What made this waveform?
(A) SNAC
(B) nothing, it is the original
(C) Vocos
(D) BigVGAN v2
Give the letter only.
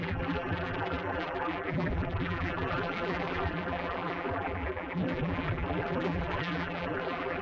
D